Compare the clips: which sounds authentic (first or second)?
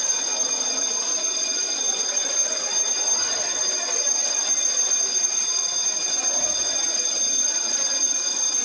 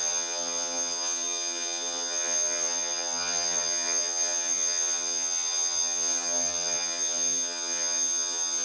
first